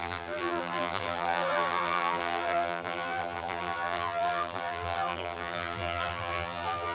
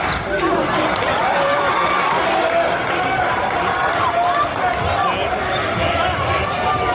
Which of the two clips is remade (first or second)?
first